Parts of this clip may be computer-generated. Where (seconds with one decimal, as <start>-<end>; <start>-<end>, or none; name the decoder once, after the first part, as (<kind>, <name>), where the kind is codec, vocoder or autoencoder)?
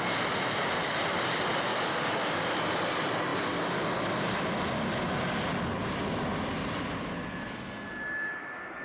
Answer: none